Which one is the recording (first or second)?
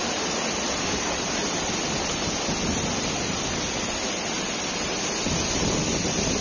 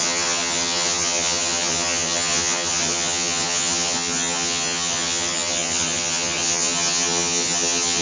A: first